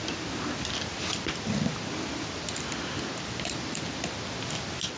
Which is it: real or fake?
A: real